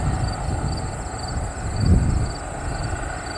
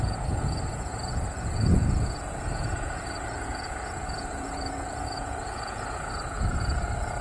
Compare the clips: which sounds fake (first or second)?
second